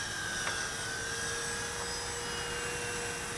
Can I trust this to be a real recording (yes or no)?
yes